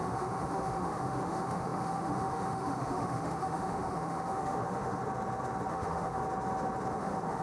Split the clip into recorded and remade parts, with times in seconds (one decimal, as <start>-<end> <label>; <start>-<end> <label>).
0.0-5.0 remade; 5.0-5.7 recorded; 5.7-6.2 remade; 6.2-6.9 recorded; 6.9-7.4 remade